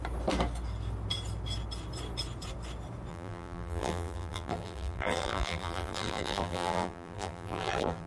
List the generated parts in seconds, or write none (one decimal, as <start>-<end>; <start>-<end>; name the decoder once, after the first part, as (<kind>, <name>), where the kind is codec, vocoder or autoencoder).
3.1-8.1 (vocoder, BigVGAN v2)